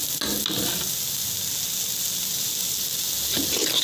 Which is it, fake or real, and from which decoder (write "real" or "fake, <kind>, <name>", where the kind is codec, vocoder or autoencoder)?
real